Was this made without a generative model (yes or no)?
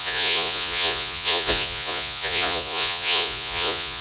no